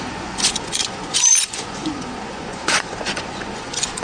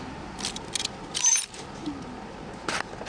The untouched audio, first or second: second